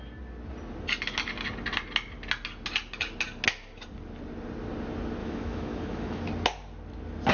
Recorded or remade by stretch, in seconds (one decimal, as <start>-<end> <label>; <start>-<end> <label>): 0.0-5.2 recorded; 5.2-6.2 remade; 6.2-7.3 recorded